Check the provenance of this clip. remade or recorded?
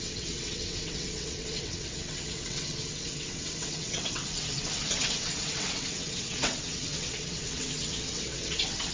remade